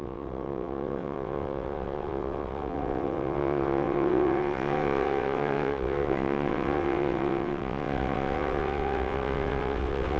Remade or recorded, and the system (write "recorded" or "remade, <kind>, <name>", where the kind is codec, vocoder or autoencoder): remade, vocoder, WaveNeXt